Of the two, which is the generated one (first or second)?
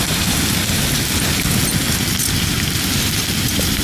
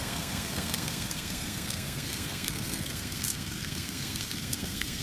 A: second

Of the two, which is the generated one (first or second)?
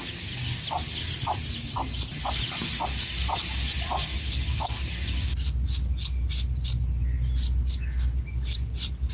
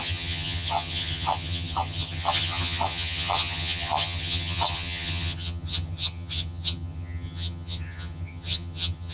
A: second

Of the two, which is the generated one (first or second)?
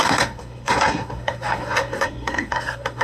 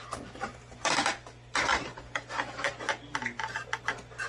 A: first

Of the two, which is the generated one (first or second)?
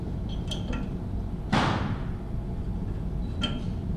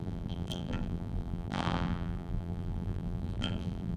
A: second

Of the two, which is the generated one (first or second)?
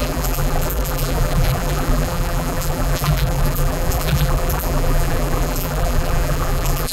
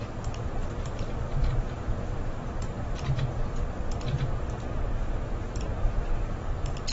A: first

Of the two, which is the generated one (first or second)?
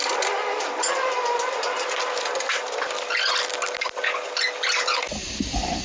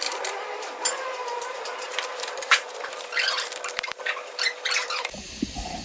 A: second